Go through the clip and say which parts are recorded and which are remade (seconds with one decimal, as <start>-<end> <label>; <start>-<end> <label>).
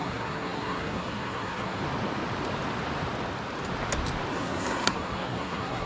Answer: 0.0-1.8 remade; 1.8-4.3 recorded; 4.3-5.9 remade